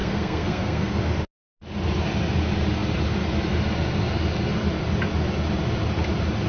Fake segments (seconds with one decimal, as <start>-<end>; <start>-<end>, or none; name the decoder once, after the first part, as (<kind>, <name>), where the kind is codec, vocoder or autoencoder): 0.0-1.0 (codec, SNAC)